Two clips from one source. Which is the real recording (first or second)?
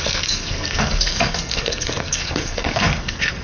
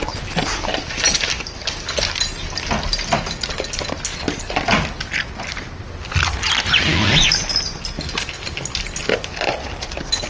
second